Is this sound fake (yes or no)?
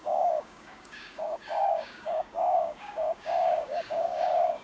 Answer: yes